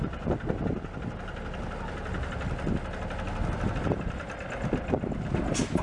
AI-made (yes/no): no